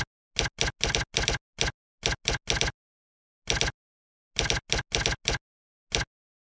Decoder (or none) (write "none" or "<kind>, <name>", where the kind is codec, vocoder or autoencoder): none